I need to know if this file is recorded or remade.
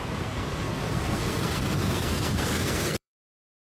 remade